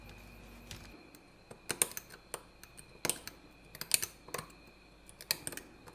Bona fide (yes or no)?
yes